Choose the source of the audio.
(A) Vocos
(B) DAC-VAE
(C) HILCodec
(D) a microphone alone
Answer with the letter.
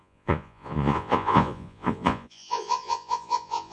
A